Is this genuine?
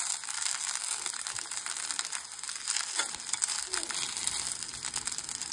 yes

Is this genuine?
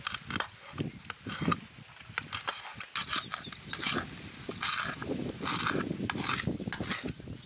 yes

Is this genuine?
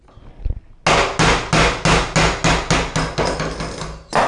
yes